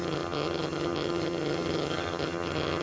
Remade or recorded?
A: remade